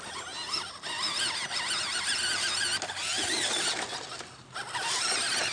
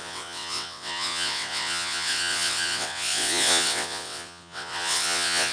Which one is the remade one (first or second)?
second